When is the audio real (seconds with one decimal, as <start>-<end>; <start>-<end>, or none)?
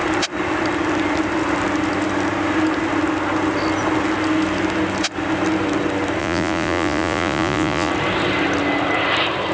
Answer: 0.0-6.2; 7.9-9.5